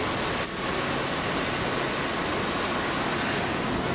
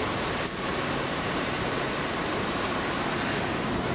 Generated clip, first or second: second